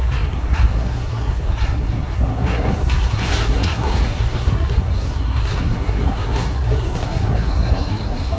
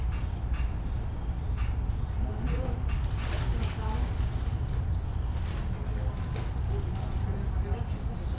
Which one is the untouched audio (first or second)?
second